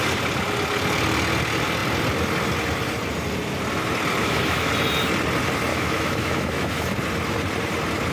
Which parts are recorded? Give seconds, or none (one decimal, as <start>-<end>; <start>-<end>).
0.0-4.2; 4.7-5.7; 6.8-8.1